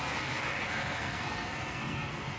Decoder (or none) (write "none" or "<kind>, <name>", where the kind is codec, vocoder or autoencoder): codec, SNAC